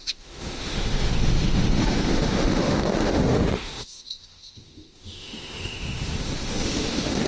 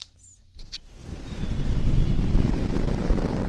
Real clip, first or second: second